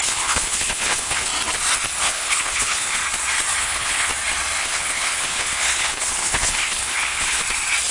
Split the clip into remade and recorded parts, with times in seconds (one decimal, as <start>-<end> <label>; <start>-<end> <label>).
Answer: 0.0-1.3 remade; 1.3-2.0 recorded; 2.0-3.0 remade; 3.0-3.6 recorded; 3.6-4.1 remade; 4.1-4.6 recorded; 4.6-7.4 remade; 7.4-7.9 recorded